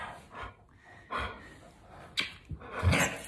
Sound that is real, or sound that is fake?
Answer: real